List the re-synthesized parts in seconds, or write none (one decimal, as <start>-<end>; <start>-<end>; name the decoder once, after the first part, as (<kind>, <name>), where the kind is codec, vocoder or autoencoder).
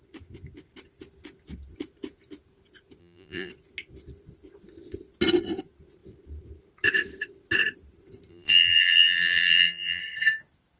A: 3.0-3.5 (vocoder, BigVGAN v2); 8.3-10.0